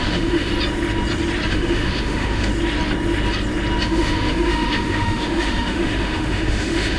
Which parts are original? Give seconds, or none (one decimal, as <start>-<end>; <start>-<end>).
0.5-1.5; 2.5-3.8